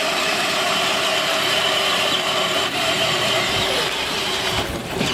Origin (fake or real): fake